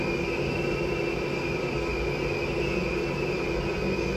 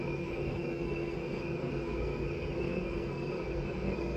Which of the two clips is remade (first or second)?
second